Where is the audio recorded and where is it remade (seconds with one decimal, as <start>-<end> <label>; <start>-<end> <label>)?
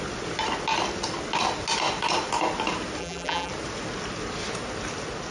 0.0-3.0 recorded; 3.0-3.5 remade; 3.5-5.3 recorded